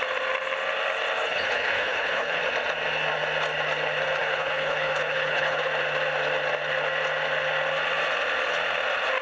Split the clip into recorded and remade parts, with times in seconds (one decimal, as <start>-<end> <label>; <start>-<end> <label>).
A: 0.0-1.3 recorded; 1.3-2.4 remade; 2.4-4.2 recorded; 4.2-5.6 remade; 5.6-9.2 recorded

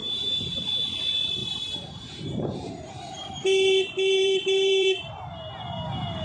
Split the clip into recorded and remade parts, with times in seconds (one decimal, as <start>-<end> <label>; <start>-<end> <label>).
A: 0.0-0.6 remade; 0.6-1.4 recorded; 1.4-5.1 remade; 5.1-6.2 recorded